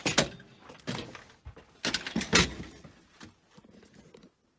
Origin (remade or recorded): recorded